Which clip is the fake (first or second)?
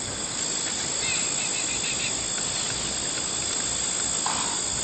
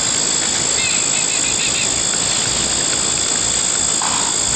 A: first